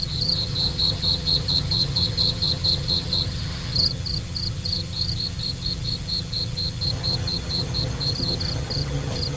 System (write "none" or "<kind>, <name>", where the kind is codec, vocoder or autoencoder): vocoder, HiFi-GAN